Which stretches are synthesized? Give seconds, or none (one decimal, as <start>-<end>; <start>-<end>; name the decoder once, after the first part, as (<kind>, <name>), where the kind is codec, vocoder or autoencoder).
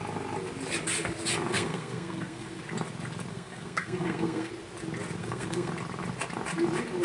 1.5-2.6 (codec, SNAC); 3.3-4.5; 5.2-5.7